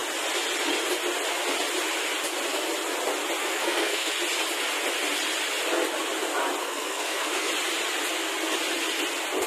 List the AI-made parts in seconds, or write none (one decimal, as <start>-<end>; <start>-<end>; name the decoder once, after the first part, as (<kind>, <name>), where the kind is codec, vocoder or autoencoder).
3.4-4.1 (codec, SNAC); 6.6-7.5